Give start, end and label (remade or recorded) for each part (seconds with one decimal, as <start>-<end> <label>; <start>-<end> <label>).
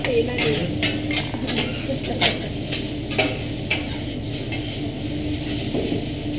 0.0-6.4 recorded